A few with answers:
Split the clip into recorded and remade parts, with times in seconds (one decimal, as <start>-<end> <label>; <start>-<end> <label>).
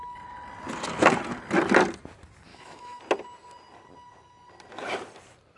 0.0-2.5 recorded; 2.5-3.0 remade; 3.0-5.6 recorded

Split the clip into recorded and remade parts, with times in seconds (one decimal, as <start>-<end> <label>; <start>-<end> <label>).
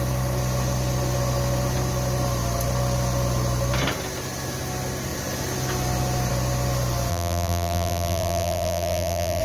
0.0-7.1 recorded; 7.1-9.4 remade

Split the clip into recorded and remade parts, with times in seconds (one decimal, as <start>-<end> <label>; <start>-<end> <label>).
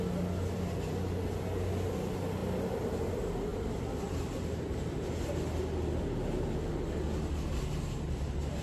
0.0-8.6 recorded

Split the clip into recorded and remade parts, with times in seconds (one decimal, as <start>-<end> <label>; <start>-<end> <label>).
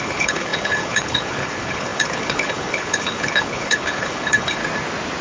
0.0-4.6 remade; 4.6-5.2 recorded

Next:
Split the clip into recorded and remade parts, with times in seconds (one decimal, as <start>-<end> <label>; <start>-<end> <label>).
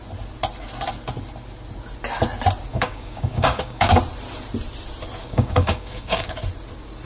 0.0-2.7 recorded; 2.7-4.0 remade; 4.0-5.2 recorded; 5.2-6.4 remade; 6.4-7.1 recorded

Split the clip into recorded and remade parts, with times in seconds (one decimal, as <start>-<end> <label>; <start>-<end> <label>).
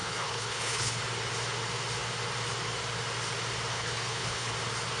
0.0-1.0 remade; 1.0-3.7 recorded; 3.7-4.5 remade; 4.5-5.0 recorded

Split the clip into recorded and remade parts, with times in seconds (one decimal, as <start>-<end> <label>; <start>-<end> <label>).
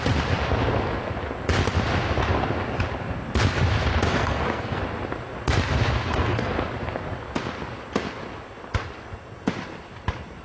0.0-4.1 recorded; 4.1-4.8 remade; 4.8-6.0 recorded; 6.0-6.5 remade; 6.5-10.4 recorded